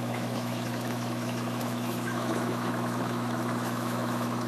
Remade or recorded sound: remade